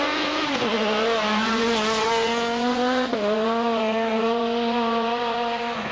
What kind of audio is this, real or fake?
fake